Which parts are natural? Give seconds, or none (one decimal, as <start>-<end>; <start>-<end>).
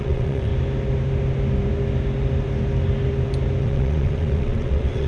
0.5-3.6